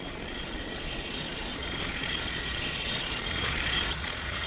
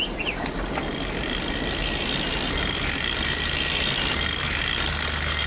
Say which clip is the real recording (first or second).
second